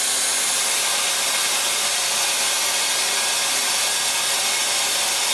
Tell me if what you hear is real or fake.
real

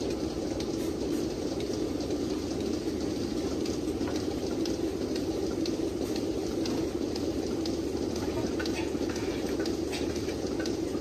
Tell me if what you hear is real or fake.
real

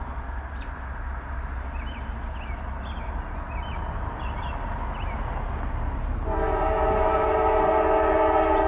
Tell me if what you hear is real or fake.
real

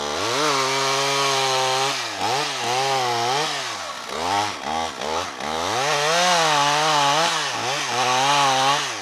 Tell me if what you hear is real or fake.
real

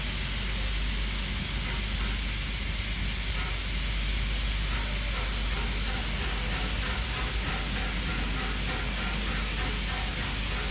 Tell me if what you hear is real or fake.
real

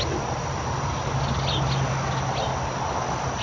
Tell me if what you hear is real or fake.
real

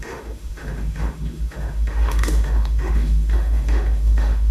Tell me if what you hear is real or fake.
fake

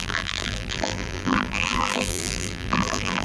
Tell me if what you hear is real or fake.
fake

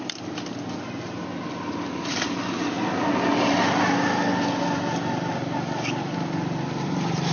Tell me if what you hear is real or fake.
real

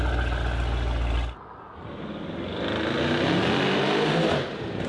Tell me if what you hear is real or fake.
real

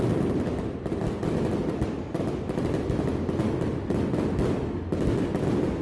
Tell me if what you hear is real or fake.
real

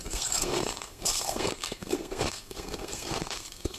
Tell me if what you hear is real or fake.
fake